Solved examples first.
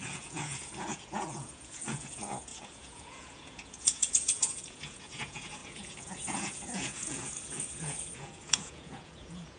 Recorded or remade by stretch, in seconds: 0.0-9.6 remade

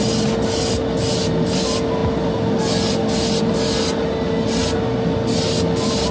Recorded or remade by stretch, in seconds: 0.0-6.1 recorded

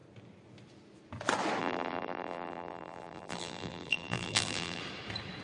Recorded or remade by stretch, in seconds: 0.0-1.6 recorded; 1.6-4.8 remade; 4.8-5.4 recorded

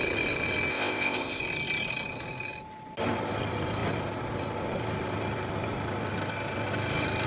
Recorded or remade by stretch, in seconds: 0.0-0.7 recorded; 0.7-1.4 remade; 1.4-7.3 recorded

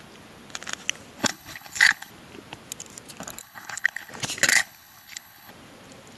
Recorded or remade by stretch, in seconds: 0.0-1.2 recorded; 1.2-2.1 remade; 2.1-3.4 recorded; 3.4-4.1 remade; 4.1-4.5 recorded; 4.5-5.5 remade; 5.5-6.2 recorded

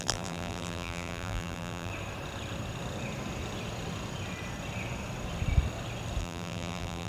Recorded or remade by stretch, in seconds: 0.0-1.9 remade; 1.9-6.2 recorded; 6.2-7.1 remade

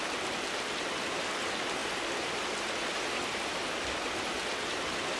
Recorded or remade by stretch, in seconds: 0.0-1.8 recorded; 1.8-5.2 remade

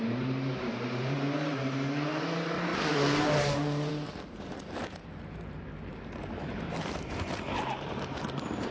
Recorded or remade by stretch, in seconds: 0.0-8.7 remade